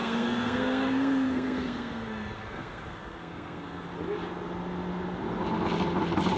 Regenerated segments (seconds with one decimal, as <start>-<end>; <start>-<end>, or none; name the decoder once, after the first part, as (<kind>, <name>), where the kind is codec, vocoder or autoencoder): 0.0-3.8 (codec, SNAC)